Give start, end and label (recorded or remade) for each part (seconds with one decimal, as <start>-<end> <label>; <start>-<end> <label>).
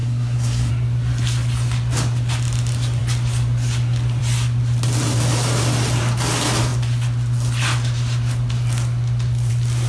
0.0-0.7 remade; 0.7-9.9 recorded